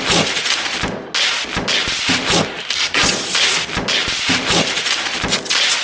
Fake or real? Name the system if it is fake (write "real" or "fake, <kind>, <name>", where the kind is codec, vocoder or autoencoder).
real